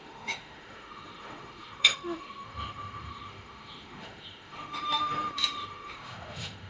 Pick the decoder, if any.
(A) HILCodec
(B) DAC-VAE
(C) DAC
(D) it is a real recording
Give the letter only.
B